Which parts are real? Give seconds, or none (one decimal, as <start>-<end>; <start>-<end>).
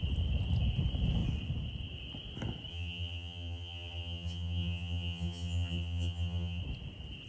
0.0-2.7; 6.6-7.3